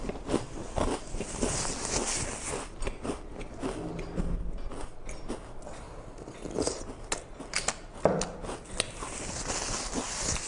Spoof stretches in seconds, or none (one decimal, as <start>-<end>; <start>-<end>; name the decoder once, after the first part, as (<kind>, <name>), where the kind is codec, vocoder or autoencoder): none